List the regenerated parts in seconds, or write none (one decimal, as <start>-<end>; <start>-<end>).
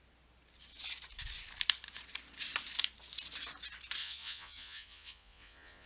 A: 4.0-5.9